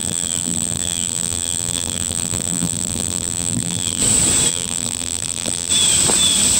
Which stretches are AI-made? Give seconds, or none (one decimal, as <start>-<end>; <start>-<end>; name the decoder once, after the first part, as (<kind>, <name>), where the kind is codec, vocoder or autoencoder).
0.0-4.0 (vocoder, BigVGAN v2); 4.5-5.7